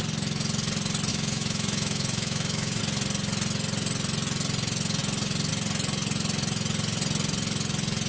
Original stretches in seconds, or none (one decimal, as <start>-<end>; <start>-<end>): 0.0-1.1; 2.8-8.1